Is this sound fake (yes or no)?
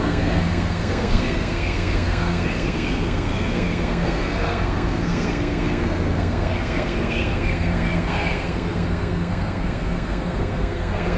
yes